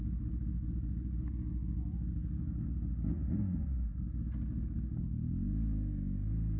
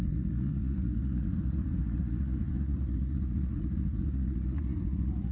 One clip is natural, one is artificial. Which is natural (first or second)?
first